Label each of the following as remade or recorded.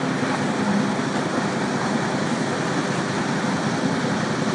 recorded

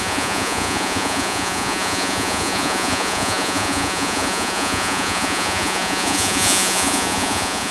remade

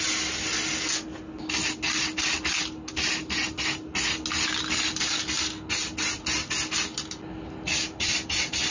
recorded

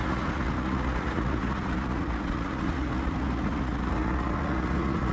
remade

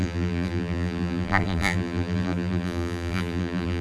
remade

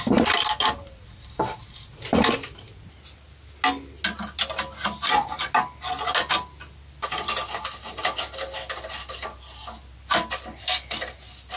recorded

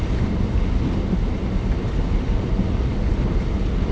recorded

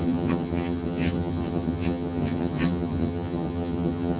remade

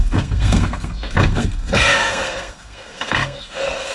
remade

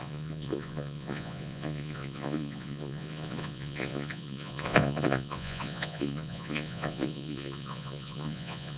remade